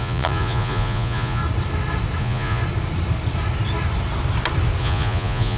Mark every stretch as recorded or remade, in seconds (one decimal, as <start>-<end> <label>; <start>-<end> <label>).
0.0-1.4 remade; 1.4-2.2 recorded; 2.2-2.6 remade; 2.6-4.8 recorded; 4.8-5.6 remade